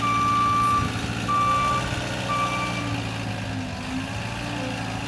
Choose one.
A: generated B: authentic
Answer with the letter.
B